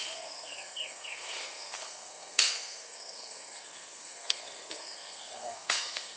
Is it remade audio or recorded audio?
remade